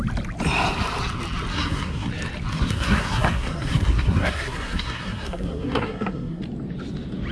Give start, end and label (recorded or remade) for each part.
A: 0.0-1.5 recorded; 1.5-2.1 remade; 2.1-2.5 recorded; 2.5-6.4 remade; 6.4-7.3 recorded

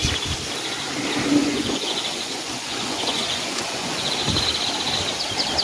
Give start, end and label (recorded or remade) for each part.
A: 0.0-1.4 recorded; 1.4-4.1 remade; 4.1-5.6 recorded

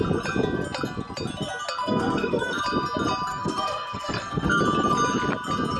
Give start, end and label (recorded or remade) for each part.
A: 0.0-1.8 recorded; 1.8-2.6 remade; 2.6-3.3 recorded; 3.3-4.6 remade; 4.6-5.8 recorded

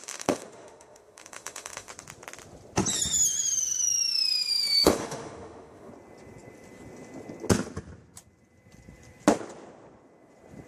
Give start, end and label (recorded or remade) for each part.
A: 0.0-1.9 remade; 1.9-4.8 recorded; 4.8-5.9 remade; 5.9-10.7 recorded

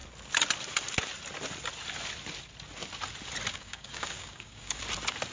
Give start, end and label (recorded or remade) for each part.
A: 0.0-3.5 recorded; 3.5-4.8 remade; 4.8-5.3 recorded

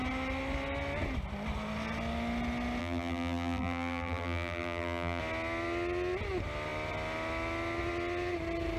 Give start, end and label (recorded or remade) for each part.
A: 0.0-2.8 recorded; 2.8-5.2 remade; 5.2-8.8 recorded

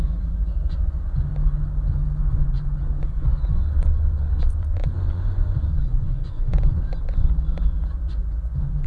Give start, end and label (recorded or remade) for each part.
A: 0.0-1.3 remade; 1.3-2.2 recorded; 2.2-8.9 remade